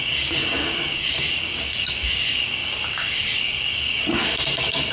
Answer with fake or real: fake